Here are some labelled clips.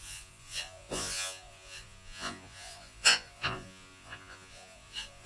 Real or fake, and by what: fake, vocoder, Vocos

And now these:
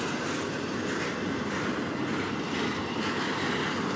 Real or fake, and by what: real